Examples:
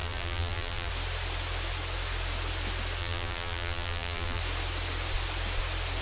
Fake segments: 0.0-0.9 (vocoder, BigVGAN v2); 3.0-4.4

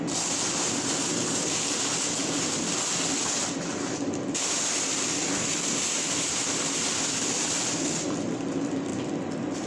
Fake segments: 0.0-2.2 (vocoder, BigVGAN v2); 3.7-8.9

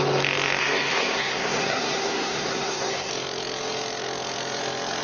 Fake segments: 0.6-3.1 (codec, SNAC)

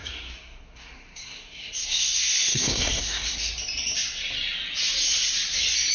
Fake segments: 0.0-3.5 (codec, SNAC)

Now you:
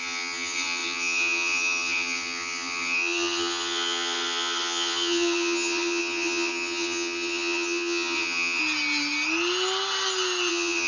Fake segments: 0.0-8.6 (vocoder, HiFi-GAN); 10.5-10.9

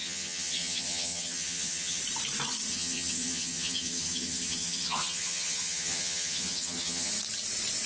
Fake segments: 0.0-2.0 (vocoder, HiFi-GAN); 2.7-7.1